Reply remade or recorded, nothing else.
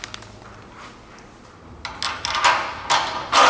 recorded